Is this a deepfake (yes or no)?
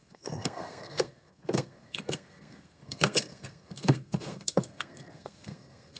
yes